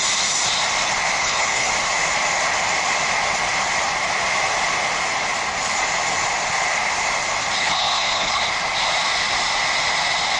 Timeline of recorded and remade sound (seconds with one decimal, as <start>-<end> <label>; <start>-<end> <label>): 0.0-1.2 recorded; 1.2-1.7 remade; 1.7-7.6 recorded; 7.6-8.4 remade; 8.4-10.4 recorded